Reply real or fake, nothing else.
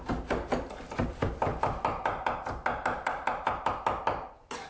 real